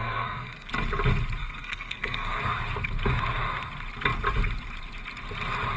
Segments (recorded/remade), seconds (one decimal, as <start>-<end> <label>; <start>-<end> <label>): 0.0-0.7 remade; 0.7-1.4 recorded; 1.4-2.4 remade; 2.4-5.8 recorded